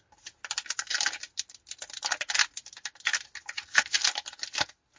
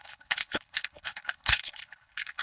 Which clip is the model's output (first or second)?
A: second